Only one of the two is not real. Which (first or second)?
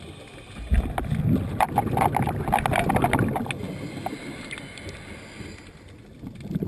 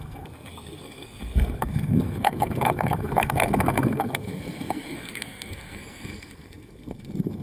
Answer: second